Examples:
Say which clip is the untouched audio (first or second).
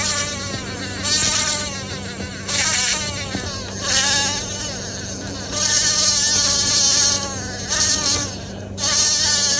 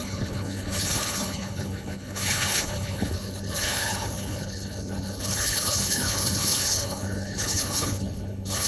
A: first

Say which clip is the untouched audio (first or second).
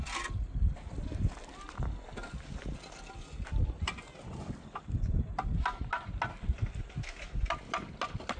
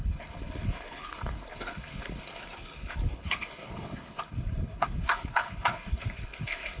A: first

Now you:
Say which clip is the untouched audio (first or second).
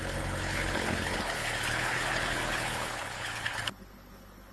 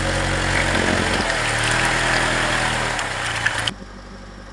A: second